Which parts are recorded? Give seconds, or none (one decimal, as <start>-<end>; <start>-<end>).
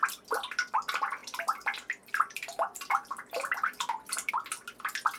0.0-1.2; 4.3-5.2